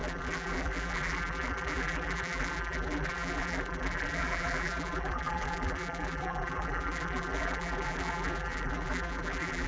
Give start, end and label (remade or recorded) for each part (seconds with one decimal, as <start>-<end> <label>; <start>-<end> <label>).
0.0-9.7 remade